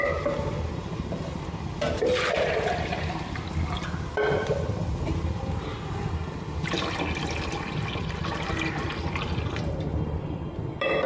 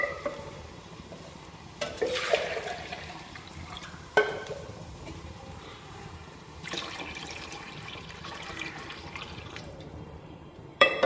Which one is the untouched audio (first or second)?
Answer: first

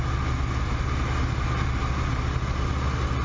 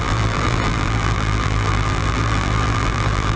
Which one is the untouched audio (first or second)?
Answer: first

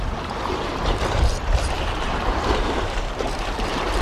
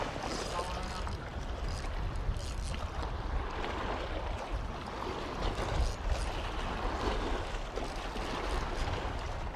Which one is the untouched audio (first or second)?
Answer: second